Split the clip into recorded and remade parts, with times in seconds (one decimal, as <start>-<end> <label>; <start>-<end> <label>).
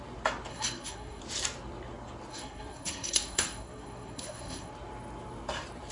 0.0-0.5 recorded; 0.5-1.2 remade; 1.2-2.3 recorded; 2.3-4.7 remade; 4.7-5.9 recorded